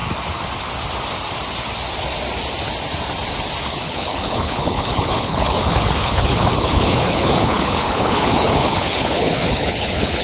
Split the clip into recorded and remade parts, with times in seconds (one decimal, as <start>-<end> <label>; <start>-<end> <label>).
0.0-3.6 recorded; 3.6-10.2 remade